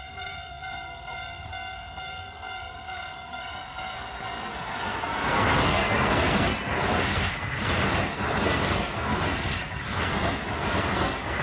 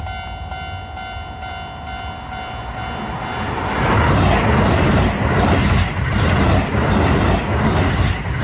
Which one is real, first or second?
second